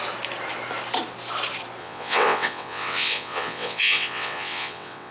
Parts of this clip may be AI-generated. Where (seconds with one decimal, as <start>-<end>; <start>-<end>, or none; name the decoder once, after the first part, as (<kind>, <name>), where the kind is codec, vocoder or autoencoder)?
1.8-5.1 (vocoder, WaveNeXt)